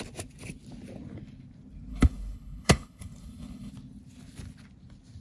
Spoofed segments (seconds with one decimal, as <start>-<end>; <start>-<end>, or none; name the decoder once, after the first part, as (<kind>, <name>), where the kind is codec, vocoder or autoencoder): 1.9-3.7 (codec, HILCodec)